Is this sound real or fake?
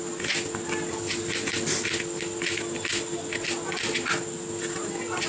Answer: real